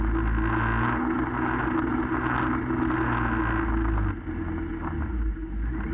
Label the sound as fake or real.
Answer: real